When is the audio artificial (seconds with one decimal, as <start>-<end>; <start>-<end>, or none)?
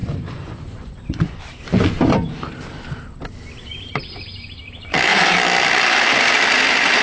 0.0-1.4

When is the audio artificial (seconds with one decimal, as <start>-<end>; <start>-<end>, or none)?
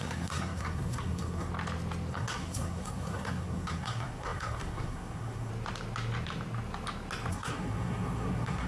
0.0-1.5; 2.1-5.5; 7.3-8.7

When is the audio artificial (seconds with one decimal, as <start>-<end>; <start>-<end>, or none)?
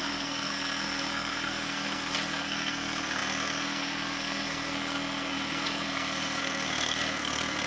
0.0-7.7